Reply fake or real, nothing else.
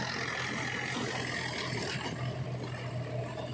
real